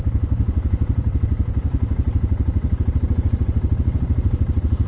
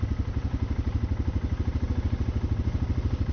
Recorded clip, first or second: second